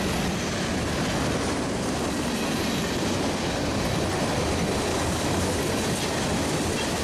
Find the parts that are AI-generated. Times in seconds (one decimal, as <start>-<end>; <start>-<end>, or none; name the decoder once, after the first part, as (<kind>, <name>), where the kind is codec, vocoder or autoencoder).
4.9-5.6 (codec, DAC)

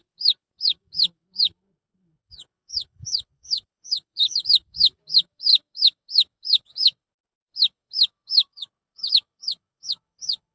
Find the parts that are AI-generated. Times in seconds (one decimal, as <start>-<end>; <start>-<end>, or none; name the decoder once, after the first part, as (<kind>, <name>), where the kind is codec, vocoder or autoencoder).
0.0-10.5 (codec, DAC)

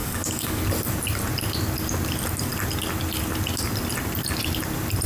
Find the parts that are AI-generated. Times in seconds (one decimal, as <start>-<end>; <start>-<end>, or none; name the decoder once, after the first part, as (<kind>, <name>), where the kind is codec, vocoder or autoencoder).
0.0-0.6 (codec, DAC)

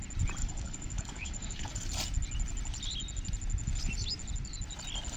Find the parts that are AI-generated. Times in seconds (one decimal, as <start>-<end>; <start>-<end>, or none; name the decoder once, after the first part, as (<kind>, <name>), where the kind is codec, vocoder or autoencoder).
0.4-1.8 (codec, DAC)

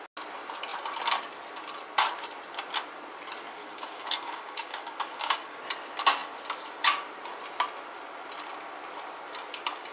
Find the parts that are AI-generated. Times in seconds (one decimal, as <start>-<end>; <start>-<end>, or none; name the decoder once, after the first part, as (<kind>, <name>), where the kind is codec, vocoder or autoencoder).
3.6-5.6 (codec, DAC)

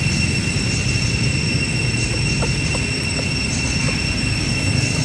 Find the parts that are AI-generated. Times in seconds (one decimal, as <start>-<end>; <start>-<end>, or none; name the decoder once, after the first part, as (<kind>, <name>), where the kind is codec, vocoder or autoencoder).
4.4-5.0 (codec, DAC)

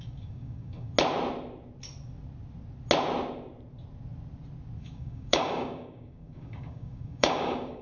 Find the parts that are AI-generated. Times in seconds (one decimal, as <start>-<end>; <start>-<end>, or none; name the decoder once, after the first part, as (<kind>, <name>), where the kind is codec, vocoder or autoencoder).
0.0-0.9 (codec, DAC); 4.8-7.8